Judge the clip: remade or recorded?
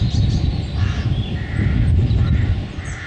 recorded